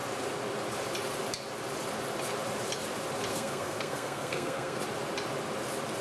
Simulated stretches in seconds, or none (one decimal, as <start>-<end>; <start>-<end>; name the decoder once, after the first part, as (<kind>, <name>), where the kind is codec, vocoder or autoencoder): 3.3-4.8 (codec, SNAC)